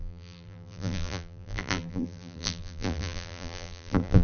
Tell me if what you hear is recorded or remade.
remade